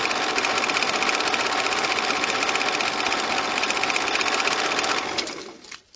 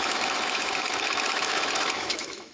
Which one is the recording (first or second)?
first